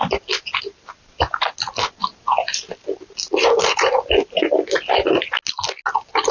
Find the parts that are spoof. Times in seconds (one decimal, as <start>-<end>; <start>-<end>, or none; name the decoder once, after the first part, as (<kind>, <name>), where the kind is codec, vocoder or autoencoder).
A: none